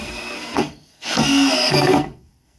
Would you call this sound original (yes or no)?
no